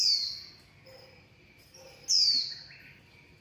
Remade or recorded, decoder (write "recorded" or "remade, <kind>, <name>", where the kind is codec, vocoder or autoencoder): recorded